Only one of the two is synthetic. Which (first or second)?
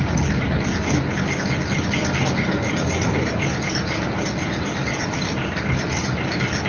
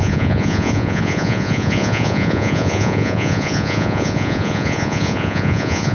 second